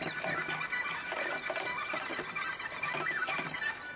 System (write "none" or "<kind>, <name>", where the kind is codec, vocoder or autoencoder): none